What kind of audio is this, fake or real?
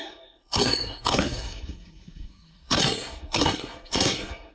fake